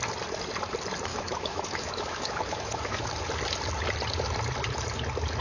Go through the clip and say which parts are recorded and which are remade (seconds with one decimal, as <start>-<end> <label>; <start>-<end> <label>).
0.0-1.1 recorded; 1.1-3.1 remade; 3.1-5.4 recorded